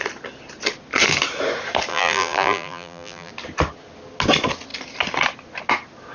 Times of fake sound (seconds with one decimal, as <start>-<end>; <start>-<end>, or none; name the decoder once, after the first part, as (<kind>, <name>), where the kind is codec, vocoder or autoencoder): 1.9-3.3 (vocoder, BigVGAN v2)